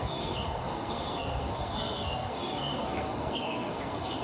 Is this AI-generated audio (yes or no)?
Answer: yes